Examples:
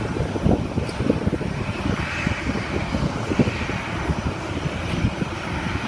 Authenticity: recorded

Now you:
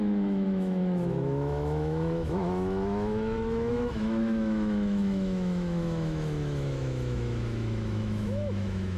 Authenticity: remade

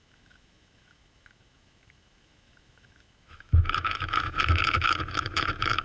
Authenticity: remade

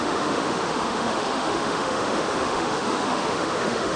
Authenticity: remade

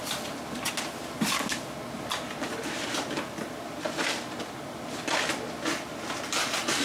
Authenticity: recorded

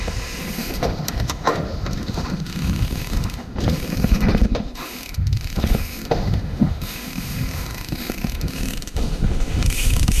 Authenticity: remade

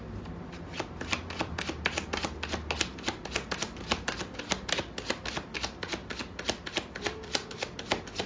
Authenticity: recorded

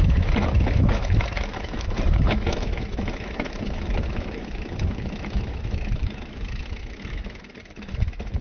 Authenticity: remade